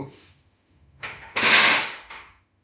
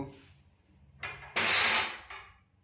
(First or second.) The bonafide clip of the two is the second